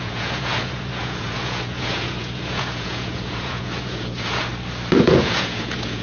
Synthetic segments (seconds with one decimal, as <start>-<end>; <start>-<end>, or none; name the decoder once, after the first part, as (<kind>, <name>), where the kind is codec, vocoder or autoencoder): 0.0-4.5 (vocoder, Vocos); 5.0-6.0